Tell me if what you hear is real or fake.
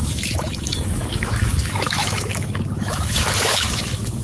fake